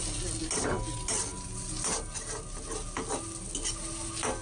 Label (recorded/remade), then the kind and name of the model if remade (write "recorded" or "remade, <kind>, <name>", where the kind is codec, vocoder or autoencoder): recorded